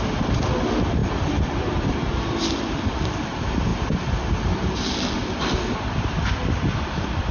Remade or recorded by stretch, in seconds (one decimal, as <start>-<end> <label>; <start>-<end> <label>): 0.0-1.0 recorded; 1.0-2.2 remade; 2.2-7.3 recorded